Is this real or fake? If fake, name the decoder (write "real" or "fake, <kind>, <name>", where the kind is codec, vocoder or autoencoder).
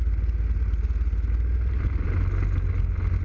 real